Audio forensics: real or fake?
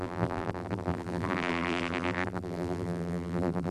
fake